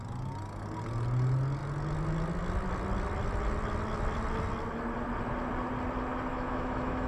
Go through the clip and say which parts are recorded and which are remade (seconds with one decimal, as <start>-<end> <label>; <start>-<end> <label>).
0.0-6.3 recorded; 6.3-7.1 remade